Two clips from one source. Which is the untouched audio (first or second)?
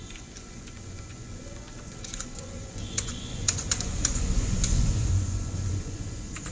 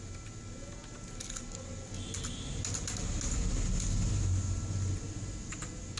second